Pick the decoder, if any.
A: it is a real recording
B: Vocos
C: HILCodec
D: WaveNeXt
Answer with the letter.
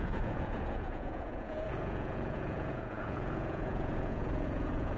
B